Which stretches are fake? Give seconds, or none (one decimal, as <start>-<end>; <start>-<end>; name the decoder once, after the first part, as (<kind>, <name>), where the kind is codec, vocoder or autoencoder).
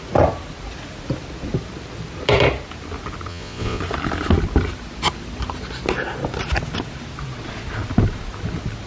3.3-3.8 (vocoder, Vocos)